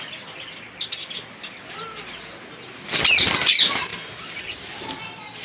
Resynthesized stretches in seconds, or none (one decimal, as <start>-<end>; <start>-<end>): 0.0-2.3; 3.5-5.4

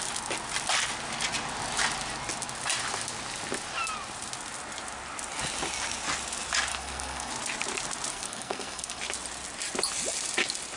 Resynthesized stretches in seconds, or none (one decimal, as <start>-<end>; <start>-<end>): 6.7-7.3; 8.1-9.0

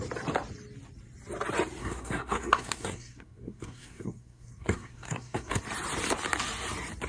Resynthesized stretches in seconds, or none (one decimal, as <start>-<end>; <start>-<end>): 1.8-5.6

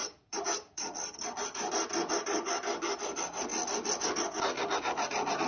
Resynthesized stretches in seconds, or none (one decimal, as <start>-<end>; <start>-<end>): 0.0-1.7

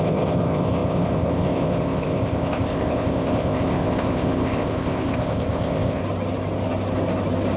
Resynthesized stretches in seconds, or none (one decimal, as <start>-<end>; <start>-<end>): 0.0-6.0

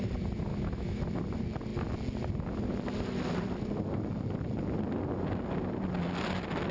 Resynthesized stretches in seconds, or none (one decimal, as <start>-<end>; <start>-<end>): 0.5-1.0

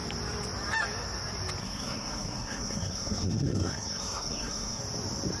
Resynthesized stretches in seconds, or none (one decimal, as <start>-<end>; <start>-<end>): 1.6-4.8

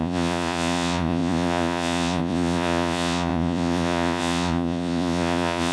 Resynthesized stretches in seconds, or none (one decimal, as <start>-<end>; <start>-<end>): 0.0-5.7